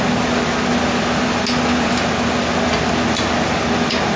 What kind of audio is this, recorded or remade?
recorded